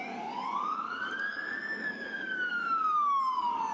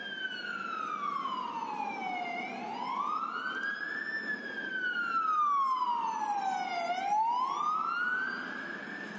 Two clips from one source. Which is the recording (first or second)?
second